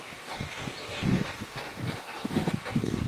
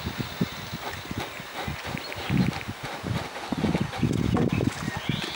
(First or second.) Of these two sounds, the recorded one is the second